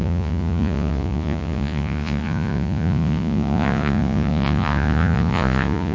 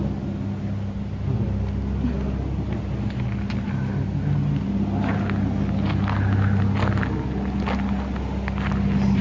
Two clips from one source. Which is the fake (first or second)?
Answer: first